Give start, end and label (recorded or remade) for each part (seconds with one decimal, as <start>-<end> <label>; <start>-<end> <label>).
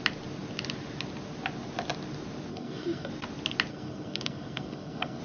0.0-2.5 recorded; 2.5-3.1 remade; 3.1-3.7 recorded; 3.7-5.2 remade